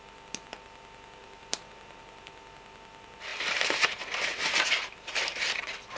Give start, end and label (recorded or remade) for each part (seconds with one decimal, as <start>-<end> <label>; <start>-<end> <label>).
0.0-1.2 recorded; 1.2-2.0 remade; 2.0-3.3 recorded; 3.3-5.4 remade; 5.4-6.0 recorded